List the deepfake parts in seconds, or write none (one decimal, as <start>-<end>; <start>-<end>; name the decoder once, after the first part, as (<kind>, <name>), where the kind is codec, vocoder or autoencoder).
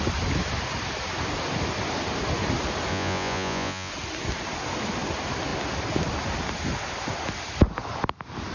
2.9-3.9 (vocoder, Vocos)